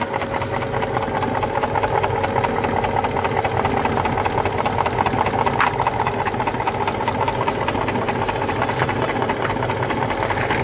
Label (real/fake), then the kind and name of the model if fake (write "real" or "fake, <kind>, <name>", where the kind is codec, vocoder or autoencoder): real